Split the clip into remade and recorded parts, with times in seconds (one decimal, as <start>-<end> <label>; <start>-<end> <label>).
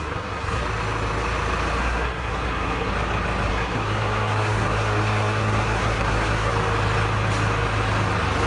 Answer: 0.0-0.6 remade; 0.6-1.8 recorded; 1.8-2.9 remade; 2.9-3.5 recorded; 3.5-6.5 remade; 6.5-8.5 recorded